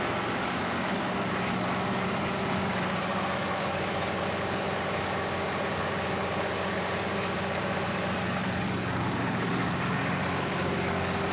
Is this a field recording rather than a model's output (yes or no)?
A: no